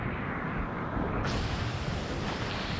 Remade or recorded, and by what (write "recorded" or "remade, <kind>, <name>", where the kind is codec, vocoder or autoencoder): recorded